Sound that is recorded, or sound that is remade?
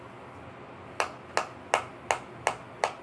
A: recorded